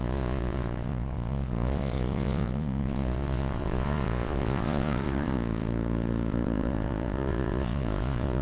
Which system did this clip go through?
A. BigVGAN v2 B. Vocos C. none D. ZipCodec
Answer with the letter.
B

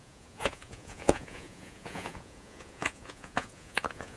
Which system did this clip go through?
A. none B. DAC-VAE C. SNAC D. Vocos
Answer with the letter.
D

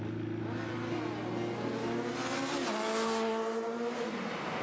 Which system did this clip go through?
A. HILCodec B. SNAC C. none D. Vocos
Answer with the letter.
C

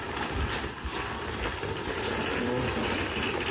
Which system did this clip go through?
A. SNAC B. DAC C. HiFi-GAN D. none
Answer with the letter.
D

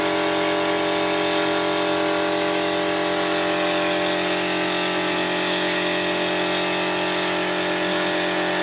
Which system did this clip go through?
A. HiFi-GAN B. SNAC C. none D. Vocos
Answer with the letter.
C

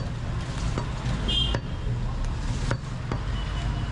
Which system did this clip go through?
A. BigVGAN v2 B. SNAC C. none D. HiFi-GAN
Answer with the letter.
C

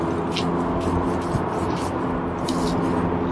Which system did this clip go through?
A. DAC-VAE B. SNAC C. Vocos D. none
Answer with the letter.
D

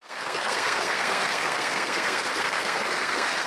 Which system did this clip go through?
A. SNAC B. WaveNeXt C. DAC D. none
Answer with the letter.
A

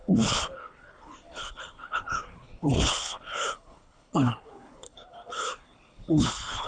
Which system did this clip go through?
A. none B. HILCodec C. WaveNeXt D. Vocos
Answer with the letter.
B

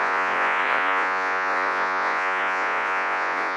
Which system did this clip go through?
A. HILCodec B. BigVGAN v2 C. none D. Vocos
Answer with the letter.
D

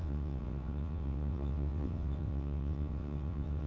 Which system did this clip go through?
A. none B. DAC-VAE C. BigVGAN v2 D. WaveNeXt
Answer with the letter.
D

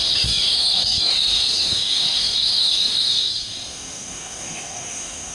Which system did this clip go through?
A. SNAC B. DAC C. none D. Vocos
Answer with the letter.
B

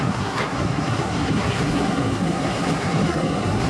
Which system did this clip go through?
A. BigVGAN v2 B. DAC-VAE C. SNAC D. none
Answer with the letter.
C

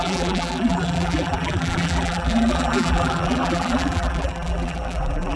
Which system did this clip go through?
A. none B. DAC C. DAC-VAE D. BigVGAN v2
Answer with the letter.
D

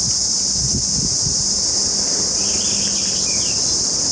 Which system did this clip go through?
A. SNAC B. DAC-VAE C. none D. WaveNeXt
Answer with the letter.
C